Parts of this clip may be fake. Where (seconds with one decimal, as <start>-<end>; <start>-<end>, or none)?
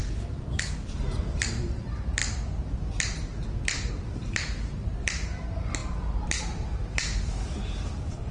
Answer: 1.6-2.2; 3.9-8.3